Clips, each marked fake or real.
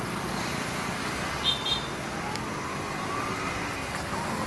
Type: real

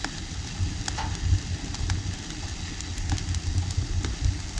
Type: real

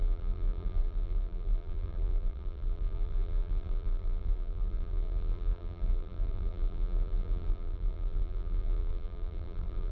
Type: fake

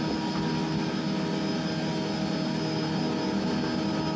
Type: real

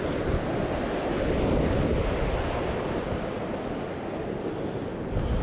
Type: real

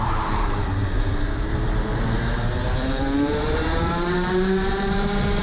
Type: fake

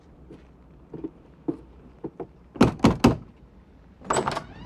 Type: real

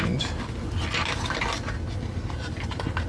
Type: real